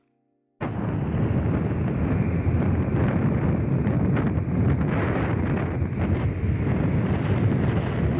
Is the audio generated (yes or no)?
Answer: no